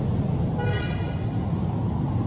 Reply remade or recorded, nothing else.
recorded